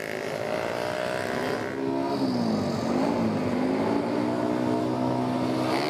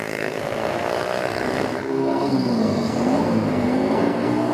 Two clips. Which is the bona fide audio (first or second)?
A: first